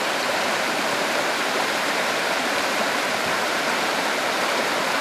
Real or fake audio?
fake